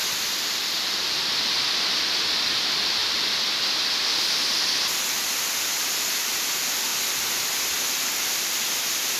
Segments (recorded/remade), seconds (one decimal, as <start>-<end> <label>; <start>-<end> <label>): 0.0-1.2 remade; 1.2-3.0 recorded; 3.0-5.1 remade; 5.1-9.2 recorded